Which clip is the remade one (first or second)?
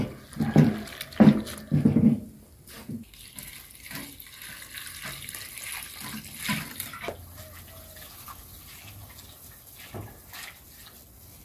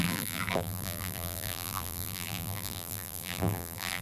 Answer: second